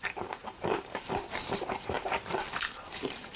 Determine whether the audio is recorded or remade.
remade